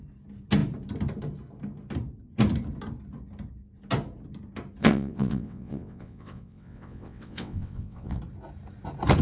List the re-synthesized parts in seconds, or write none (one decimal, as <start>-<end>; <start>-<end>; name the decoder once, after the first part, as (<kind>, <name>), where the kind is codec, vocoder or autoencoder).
4.8-8.2 (vocoder, WaveNeXt)